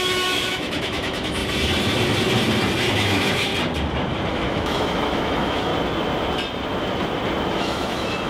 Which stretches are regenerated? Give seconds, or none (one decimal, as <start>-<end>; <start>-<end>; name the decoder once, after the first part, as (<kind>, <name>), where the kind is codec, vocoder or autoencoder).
0.0-1.4 (autoencoder, DAC-VAE); 2.9-3.5; 4.3-5.7; 7.5-8.3